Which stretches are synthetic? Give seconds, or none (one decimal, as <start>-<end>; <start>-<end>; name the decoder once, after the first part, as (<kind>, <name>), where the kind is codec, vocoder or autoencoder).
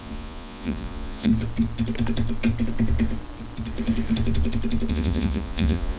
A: 0.0-1.3 (vocoder, Vocos); 4.9-6.0